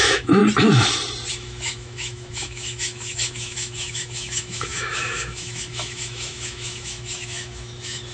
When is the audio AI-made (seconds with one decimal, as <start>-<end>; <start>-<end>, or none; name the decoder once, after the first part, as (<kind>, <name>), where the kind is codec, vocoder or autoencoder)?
0.0-0.4 (autoencoder, DAC-VAE); 1.3-8.1